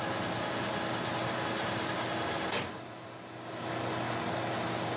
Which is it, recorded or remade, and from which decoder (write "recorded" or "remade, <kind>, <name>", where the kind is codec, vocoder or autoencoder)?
recorded